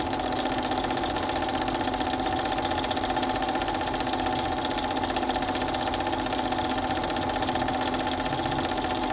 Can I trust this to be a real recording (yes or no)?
yes